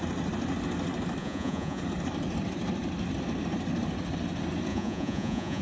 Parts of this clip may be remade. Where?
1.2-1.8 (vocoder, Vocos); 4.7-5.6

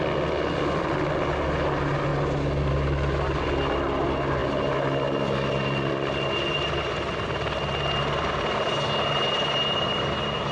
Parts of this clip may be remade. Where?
none

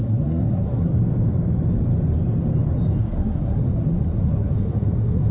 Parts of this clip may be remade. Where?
0.0-0.9 (codec, SNAC); 3.0-5.3